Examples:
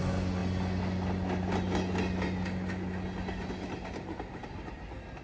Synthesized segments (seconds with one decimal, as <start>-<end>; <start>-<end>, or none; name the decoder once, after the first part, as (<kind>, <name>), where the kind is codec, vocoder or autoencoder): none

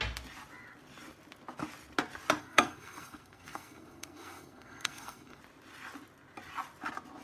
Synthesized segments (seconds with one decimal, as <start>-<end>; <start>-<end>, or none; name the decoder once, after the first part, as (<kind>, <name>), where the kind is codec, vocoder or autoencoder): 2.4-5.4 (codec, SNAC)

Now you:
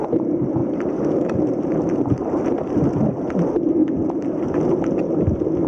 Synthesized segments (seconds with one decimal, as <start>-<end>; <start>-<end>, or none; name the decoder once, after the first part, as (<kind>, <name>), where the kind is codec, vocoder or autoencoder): 0.6-2.5 (vocoder, BigVGAN v2); 3.8-4.4

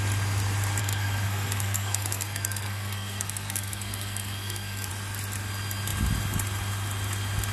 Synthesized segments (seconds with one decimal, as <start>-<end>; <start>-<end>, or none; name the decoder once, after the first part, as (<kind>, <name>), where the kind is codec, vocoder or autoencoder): 0.8-4.9 (codec, SNAC)

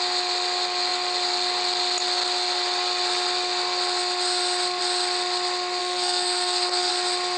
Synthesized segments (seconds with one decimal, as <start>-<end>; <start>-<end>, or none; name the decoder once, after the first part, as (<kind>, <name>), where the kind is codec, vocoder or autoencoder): 5.8-6.9 (codec, SNAC)

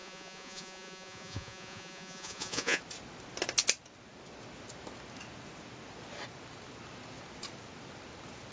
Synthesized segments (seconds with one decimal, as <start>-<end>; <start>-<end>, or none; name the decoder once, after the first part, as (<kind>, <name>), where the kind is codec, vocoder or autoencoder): 0.0-2.8 (vocoder, Vocos)

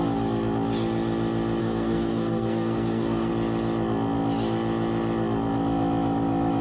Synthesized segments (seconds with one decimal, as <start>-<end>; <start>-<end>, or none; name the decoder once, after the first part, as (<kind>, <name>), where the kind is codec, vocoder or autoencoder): 1.6-3.3 (codec, SNAC)